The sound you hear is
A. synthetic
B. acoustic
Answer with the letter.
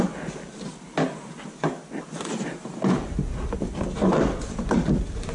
B